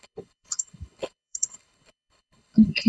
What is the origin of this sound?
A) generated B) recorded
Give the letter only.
A